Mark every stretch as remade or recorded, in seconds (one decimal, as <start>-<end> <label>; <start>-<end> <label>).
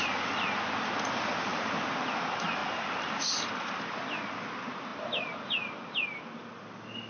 0.0-7.1 recorded